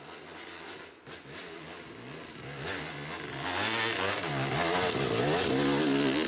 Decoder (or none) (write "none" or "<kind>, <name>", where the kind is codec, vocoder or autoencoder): none